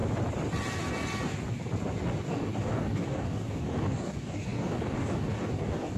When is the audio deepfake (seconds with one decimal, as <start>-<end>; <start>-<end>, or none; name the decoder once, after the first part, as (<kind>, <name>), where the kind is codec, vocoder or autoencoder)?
2.2-6.0 (codec, DAC)